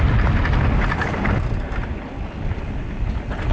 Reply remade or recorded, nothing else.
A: recorded